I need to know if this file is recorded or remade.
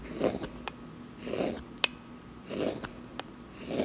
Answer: recorded